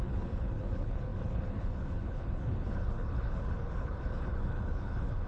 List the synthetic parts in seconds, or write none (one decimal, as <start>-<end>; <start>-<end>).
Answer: 0.0-5.3